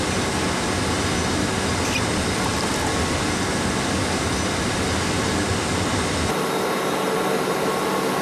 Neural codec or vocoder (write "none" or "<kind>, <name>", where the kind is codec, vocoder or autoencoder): none